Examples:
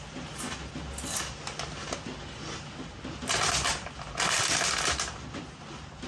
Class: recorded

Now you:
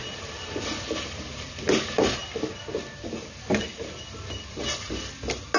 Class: recorded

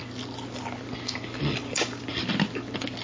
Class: recorded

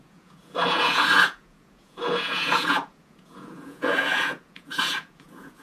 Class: remade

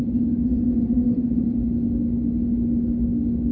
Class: recorded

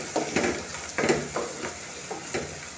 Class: recorded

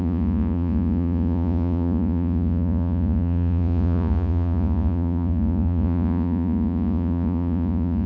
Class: remade